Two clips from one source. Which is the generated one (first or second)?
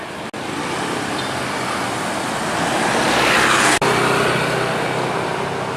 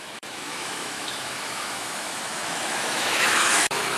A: second